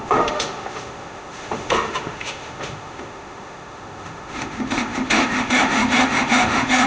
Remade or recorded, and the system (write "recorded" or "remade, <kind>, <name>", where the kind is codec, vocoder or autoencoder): remade, autoencoder, DAC-VAE